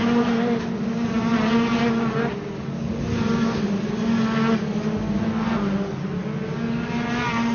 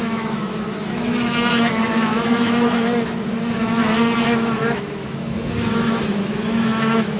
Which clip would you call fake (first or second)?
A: second